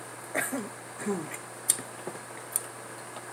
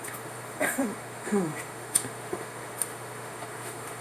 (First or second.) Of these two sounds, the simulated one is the second